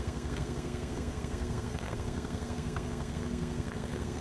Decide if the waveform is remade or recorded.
remade